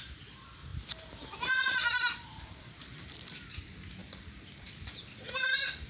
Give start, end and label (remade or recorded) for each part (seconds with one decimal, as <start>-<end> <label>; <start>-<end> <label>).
0.0-0.7 recorded; 0.7-3.1 remade; 3.1-4.0 recorded; 4.0-5.9 remade